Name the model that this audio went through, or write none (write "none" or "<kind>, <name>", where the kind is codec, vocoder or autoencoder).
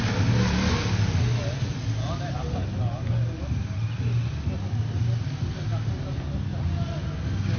none